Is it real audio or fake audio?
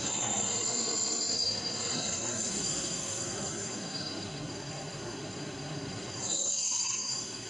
fake